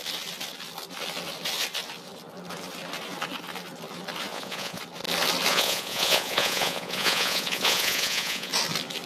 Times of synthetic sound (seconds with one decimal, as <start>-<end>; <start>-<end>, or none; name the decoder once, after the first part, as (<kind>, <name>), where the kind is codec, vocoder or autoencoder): 4.3-4.8 (vocoder, Vocos); 5.5-8.5

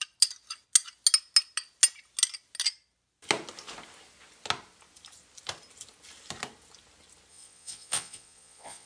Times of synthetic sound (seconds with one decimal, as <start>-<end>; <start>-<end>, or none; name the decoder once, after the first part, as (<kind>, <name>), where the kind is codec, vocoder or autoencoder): 7.3-8.9 (vocoder, Vocos)

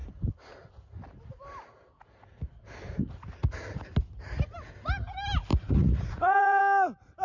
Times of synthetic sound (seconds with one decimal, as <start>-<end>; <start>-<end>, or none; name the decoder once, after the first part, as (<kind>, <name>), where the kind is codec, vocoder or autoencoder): 5.5-6.6 (vocoder, Vocos)

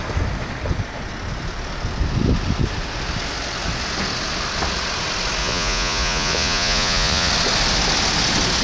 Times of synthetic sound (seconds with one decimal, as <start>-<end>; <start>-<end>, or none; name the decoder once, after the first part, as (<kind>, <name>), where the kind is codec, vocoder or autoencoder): 5.4-7.3 (vocoder, Vocos)

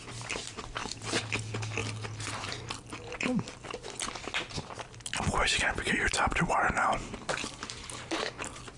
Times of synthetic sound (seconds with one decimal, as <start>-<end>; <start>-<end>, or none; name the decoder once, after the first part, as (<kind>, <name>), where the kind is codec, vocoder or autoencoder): none